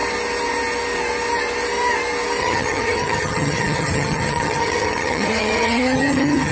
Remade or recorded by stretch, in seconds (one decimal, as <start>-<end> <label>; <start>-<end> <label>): 0.0-2.4 recorded; 2.4-6.5 remade